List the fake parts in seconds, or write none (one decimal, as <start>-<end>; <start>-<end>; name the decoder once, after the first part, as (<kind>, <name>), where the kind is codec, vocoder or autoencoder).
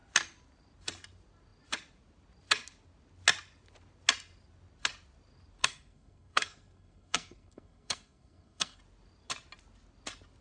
5.6-8.8 (codec, SNAC)